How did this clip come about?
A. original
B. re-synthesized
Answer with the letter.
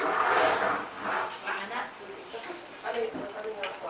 A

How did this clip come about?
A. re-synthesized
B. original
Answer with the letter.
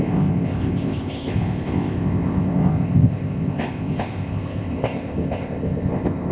A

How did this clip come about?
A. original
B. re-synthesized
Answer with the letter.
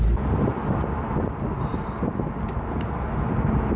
A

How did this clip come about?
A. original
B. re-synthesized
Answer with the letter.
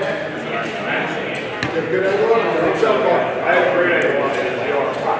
A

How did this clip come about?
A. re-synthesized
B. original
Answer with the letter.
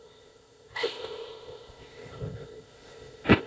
A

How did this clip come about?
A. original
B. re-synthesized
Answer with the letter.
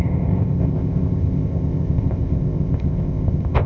B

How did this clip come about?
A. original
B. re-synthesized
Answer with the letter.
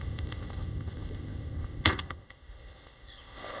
B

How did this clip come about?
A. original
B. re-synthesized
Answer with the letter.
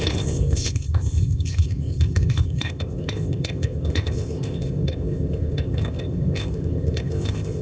B